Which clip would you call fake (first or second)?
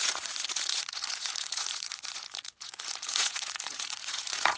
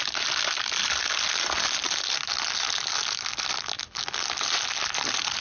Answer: first